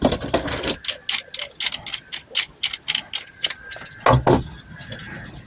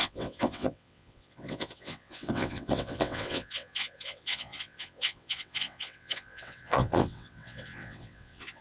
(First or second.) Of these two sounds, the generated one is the second